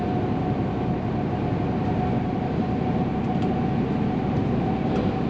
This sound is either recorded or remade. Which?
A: recorded